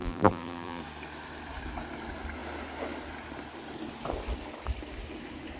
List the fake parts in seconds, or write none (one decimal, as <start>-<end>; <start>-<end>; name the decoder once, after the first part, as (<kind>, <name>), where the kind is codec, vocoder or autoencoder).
0.0-0.8 (vocoder, BigVGAN v2)